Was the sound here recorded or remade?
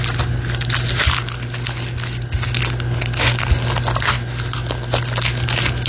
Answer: recorded